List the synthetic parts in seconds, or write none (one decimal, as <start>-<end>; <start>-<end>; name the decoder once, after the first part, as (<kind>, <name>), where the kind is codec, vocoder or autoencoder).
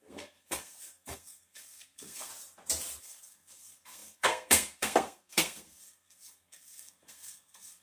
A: 0.0-2.3 (codec, SNAC); 3.0-7.8